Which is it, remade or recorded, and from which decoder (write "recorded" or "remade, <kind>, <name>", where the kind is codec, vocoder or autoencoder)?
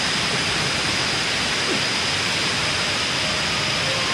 recorded